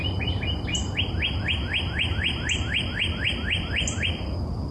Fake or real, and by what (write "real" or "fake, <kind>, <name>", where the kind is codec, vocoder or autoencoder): real